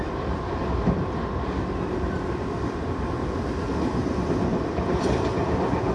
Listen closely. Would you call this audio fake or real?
fake